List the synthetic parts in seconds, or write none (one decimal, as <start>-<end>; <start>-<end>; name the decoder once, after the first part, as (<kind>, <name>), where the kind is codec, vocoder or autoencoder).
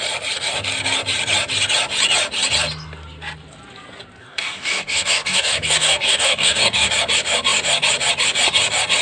4.2-6.9 (codec, DAC)